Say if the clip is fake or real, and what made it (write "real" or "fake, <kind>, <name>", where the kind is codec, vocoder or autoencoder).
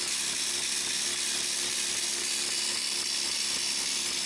real